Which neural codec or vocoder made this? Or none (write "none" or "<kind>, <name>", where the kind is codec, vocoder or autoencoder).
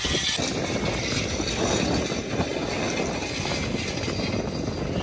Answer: none